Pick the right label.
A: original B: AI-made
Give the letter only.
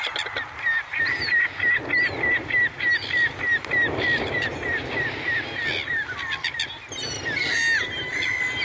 A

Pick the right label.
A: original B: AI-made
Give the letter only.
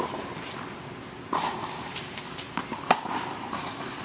A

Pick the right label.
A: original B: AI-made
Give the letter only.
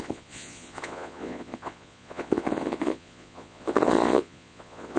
B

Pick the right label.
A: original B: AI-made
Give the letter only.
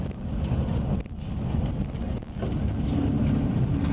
A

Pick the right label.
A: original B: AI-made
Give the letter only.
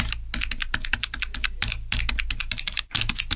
A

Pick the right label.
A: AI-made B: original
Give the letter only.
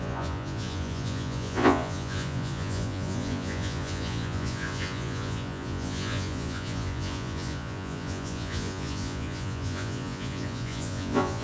A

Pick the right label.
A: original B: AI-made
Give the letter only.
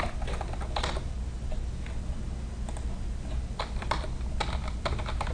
A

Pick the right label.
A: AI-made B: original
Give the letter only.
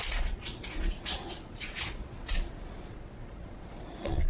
A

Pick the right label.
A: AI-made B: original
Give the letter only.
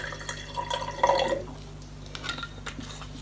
B